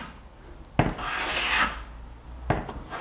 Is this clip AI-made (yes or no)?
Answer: no